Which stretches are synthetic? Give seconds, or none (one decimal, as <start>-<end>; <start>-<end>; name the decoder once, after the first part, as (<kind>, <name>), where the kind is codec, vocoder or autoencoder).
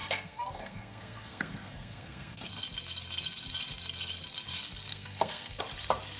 0.0-2.5 (codec, SNAC); 4.9-5.6